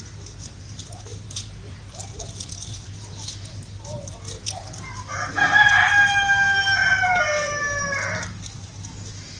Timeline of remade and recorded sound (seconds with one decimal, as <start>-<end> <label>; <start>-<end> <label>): 0.0-9.4 recorded